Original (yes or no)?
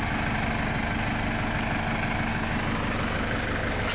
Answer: yes